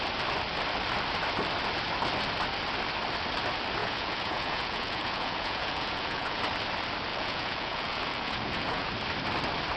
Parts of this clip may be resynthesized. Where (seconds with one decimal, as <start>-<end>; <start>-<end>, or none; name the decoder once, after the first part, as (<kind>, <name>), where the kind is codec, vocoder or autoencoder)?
3.8-6.4 (vocoder, Vocos); 7.1-8.9